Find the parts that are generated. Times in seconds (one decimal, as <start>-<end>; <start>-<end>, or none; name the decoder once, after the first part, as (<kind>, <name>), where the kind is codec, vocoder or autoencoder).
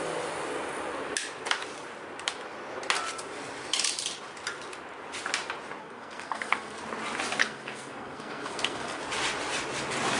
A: 5.8-6.8 (codec, SNAC); 7.4-9.0